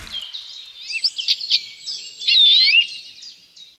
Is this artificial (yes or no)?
no